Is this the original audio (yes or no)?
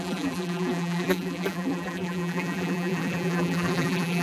no